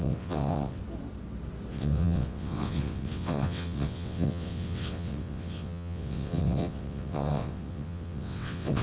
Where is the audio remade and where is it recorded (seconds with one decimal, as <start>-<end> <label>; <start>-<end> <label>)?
0.0-0.8 remade; 0.8-1.7 recorded; 1.7-8.8 remade